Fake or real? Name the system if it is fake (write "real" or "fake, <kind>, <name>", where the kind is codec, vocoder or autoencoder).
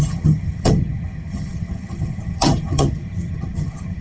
fake, vocoder, HiFi-GAN